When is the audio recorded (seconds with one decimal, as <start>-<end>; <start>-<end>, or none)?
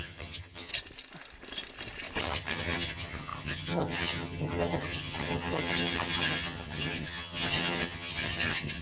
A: 0.7-2.2